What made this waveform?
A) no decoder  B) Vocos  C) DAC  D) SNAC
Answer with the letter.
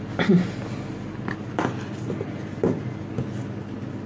A